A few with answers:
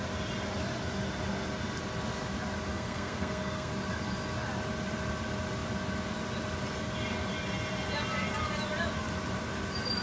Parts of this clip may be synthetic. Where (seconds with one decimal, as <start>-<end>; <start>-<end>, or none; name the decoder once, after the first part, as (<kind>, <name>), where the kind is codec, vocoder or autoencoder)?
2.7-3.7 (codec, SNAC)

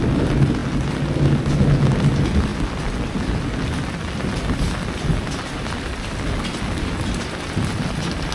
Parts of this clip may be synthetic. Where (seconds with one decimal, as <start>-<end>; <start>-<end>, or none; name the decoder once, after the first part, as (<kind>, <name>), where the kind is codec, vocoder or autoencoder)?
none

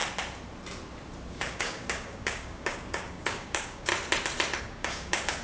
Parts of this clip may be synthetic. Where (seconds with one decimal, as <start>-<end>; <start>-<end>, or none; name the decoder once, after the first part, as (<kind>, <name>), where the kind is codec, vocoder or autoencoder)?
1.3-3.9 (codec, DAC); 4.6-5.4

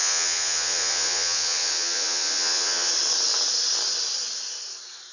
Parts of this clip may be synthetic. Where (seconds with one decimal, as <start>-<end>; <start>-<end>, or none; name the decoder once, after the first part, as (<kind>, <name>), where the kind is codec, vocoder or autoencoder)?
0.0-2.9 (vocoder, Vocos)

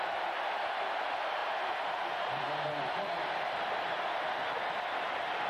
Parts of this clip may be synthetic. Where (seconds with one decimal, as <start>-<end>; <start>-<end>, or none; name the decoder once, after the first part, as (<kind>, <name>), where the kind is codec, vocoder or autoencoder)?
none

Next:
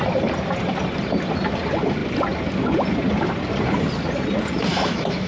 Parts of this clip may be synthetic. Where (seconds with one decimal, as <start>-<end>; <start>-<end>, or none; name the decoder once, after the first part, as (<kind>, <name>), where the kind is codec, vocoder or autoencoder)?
4.7-5.3 (autoencoder, DAC-VAE)

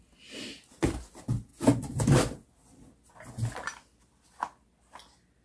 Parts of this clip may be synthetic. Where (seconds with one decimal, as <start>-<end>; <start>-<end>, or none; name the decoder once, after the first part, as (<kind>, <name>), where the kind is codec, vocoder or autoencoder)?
none